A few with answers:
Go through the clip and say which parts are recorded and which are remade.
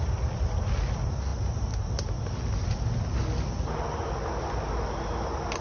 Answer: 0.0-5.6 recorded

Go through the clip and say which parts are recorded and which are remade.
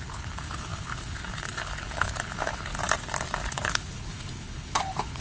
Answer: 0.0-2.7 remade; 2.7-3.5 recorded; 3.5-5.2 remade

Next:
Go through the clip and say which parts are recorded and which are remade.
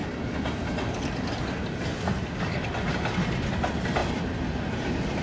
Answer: 0.0-5.2 recorded